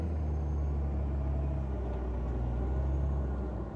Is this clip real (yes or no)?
yes